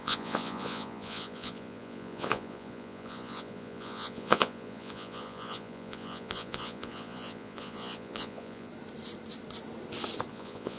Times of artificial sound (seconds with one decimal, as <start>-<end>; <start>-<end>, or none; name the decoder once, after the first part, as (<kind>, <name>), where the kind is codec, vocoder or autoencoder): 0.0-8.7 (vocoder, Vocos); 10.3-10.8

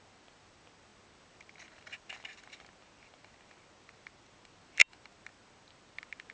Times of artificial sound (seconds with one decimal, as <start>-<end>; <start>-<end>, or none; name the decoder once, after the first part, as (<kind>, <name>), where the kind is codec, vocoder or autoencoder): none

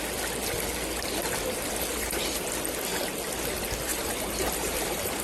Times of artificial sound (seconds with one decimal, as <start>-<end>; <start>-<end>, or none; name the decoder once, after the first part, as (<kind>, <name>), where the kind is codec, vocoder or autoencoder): 1.9-2.5 (vocoder, BigVGAN v2); 3.9-5.2

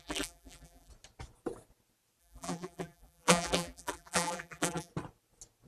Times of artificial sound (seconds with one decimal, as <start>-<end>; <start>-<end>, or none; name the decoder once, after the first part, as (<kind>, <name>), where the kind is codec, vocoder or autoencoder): 0.0-0.9 (vocoder, BigVGAN v2); 2.2-4.9

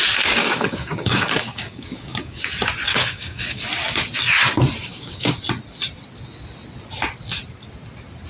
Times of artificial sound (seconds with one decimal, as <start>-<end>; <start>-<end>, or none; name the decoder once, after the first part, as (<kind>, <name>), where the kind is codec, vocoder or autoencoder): 0.4-2.4 (codec, DAC); 2.9-3.6; 4.8-5.4

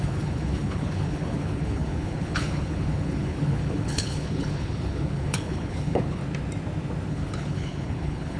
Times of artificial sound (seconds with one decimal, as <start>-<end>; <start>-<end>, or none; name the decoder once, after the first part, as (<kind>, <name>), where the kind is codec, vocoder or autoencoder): 0.0-6.2 (codec, HILCodec); 7.1-8.4

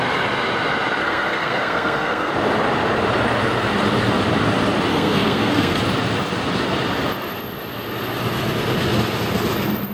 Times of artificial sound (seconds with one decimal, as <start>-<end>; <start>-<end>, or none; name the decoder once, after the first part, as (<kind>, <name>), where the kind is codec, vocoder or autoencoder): 1.0-2.3 (codec, SNAC); 4.9-5.8

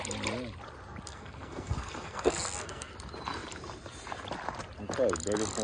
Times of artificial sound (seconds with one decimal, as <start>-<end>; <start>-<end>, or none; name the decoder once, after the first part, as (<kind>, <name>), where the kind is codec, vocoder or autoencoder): 1.1-2.9 (codec, SNAC)